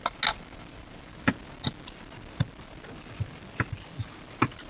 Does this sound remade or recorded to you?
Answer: recorded